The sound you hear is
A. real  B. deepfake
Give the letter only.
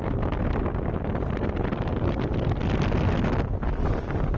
A